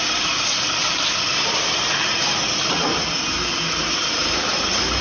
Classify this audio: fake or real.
fake